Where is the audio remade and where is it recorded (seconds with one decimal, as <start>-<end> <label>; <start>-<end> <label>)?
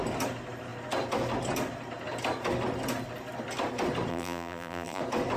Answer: 0.0-4.1 recorded; 4.1-5.0 remade; 5.0-5.4 recorded